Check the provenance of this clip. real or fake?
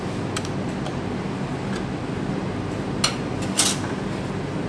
real